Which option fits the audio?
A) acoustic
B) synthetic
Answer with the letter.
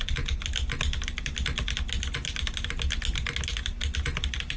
A